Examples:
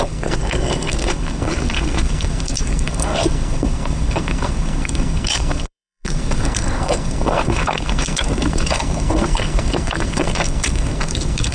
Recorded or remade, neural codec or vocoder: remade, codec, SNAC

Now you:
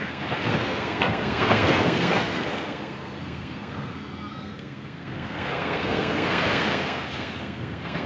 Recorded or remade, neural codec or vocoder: remade, codec, SNAC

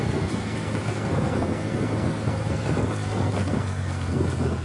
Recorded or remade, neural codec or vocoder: remade, codec, SNAC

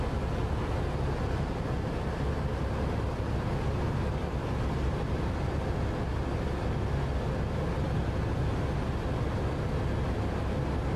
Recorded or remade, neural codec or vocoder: recorded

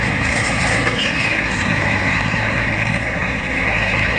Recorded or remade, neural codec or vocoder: remade, codec, SNAC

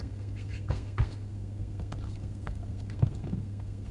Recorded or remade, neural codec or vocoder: remade, codec, SNAC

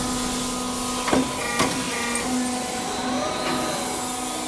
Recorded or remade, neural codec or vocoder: recorded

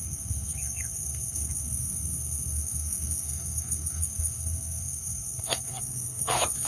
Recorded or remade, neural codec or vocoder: remade, codec, SNAC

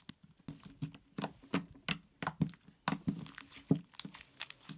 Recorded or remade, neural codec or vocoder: recorded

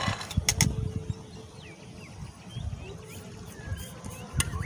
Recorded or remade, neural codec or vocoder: recorded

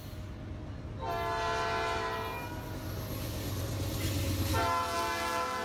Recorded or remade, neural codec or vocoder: recorded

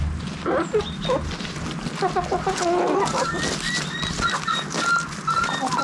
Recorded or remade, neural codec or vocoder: recorded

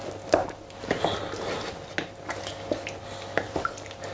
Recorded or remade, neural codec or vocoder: recorded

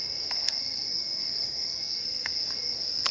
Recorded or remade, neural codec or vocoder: remade, codec, SNAC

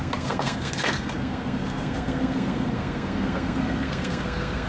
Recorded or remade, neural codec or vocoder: remade, codec, SNAC